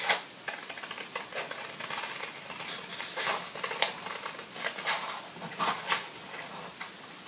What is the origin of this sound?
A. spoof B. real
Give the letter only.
B